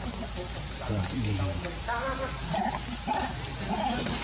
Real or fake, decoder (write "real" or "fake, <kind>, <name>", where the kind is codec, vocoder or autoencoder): real